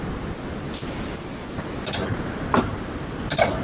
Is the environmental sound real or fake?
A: real